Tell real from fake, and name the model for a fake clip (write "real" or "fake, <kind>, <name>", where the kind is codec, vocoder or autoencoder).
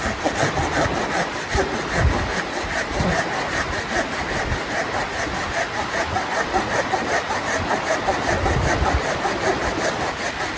real